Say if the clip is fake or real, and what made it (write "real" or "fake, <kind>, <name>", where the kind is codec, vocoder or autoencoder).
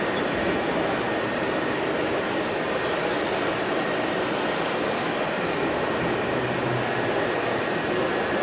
real